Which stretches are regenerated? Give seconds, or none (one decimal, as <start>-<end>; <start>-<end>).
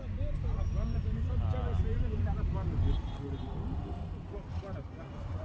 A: none